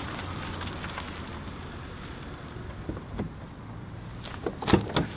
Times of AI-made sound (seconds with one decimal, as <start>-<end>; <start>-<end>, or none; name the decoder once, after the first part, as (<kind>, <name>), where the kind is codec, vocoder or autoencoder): none